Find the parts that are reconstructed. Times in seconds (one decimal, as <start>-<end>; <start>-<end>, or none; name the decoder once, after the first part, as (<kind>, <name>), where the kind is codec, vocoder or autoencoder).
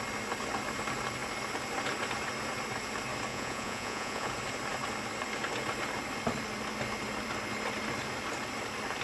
3.3-4.3 (vocoder, Vocos)